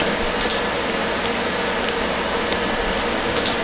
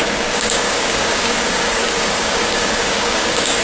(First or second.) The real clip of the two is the first